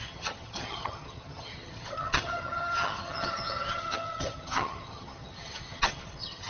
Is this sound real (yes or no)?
no